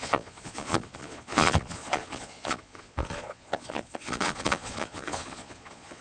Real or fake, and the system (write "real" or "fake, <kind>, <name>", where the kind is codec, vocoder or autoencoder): fake, vocoder, Vocos